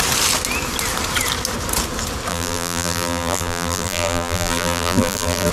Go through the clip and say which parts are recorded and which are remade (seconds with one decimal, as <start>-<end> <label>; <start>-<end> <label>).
0.0-2.3 recorded; 2.3-5.5 remade